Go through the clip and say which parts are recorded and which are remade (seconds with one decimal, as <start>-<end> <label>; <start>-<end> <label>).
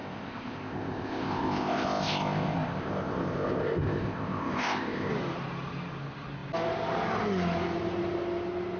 0.0-5.1 remade; 5.1-8.8 recorded